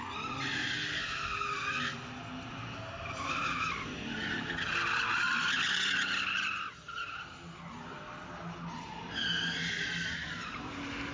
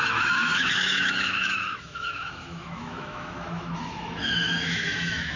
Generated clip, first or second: second